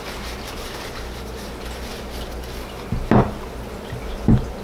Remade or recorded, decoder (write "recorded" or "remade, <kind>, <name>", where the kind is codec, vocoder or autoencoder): recorded